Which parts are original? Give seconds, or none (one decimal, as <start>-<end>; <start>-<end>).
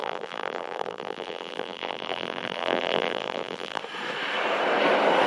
3.8-5.3